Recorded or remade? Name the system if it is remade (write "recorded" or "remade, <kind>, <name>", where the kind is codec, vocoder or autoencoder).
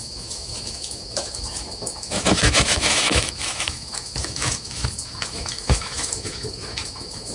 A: remade, autoencoder, DAC-VAE